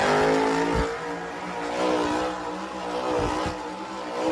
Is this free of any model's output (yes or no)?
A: yes